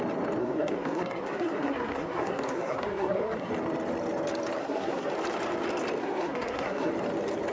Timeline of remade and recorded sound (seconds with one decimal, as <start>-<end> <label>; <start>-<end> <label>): 0.0-0.4 recorded; 0.4-3.5 remade; 3.5-4.6 recorded; 4.6-5.1 remade; 5.1-6.0 recorded; 6.0-6.9 remade; 6.9-7.5 recorded